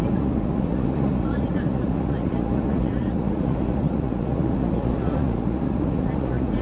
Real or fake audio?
fake